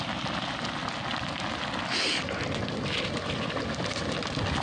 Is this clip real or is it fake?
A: real